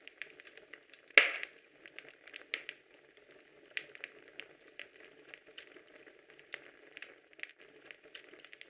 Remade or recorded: recorded